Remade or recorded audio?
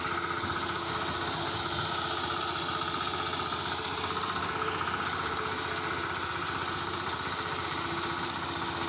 recorded